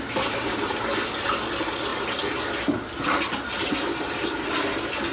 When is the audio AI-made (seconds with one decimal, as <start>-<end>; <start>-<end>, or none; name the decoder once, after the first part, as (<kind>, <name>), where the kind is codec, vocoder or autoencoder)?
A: none